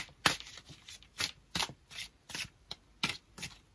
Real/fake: real